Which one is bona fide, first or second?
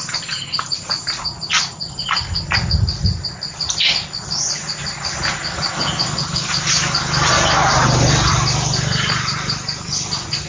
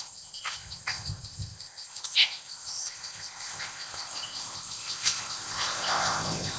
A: first